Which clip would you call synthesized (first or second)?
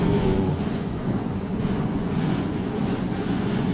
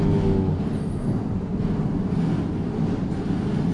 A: first